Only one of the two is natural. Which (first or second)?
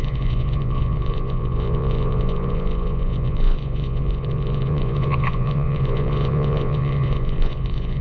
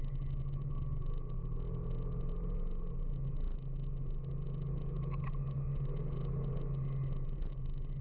second